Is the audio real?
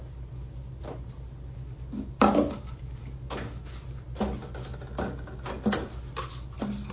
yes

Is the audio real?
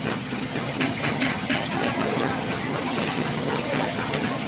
no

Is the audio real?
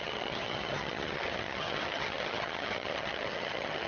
no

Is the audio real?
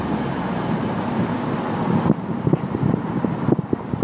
yes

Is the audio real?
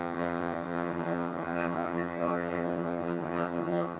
no